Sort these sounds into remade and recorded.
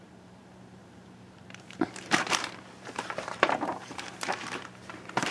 remade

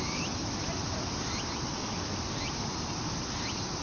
recorded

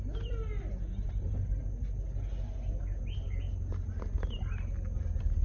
recorded